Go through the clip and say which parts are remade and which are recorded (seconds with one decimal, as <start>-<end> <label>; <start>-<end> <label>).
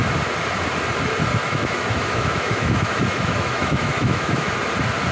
0.0-1.4 recorded; 1.4-4.5 remade; 4.5-5.1 recorded